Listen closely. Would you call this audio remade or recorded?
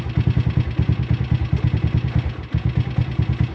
recorded